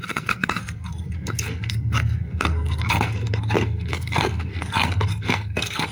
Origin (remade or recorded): remade